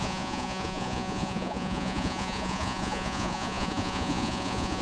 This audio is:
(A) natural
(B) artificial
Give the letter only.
B